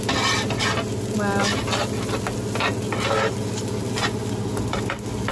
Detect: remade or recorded recorded